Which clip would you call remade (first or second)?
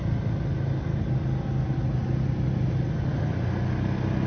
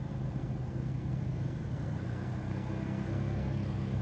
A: second